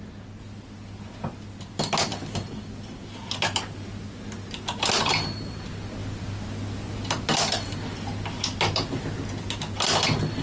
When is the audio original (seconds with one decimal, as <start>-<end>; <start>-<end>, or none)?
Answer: 0.0-10.4